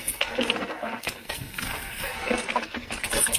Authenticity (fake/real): fake